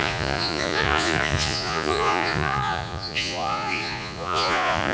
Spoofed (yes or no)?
yes